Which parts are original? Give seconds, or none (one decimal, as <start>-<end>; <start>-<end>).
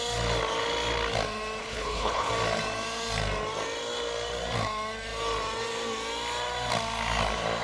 0.0-1.6; 2.3-7.6